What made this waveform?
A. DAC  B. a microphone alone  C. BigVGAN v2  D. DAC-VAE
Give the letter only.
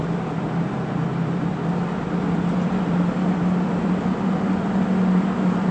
C